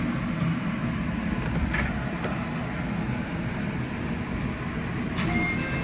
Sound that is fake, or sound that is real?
real